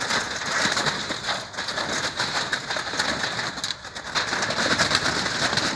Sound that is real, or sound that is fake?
real